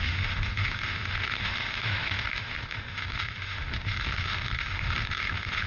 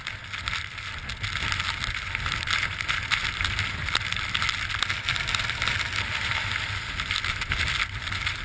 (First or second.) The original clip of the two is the second